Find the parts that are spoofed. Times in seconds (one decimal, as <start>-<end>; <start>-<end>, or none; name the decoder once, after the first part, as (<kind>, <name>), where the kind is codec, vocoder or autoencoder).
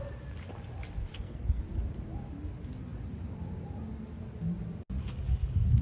1.1-1.6 (codec, SNAC)